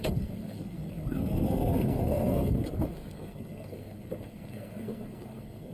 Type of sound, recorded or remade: remade